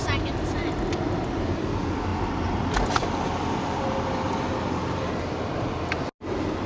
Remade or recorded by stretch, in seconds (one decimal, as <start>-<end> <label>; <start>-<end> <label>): 0.0-6.7 recorded